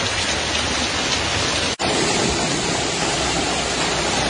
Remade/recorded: recorded